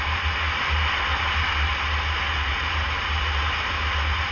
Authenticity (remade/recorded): recorded